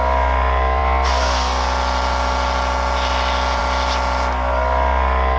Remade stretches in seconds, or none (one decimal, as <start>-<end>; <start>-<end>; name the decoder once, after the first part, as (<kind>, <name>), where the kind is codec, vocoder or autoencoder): none